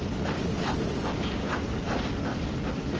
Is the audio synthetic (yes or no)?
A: no